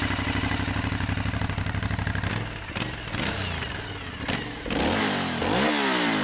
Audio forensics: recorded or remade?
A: recorded